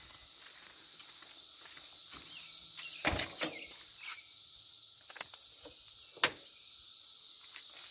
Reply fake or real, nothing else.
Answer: real